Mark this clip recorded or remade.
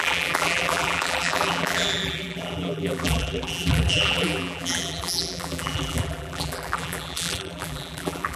remade